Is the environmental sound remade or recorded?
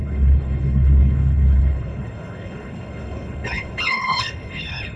remade